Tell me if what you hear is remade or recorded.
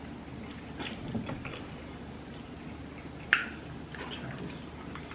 recorded